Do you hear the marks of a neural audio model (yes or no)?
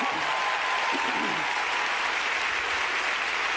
no